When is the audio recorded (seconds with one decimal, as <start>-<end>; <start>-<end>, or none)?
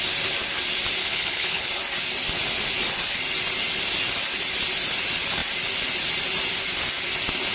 0.0-1.0; 1.7-7.5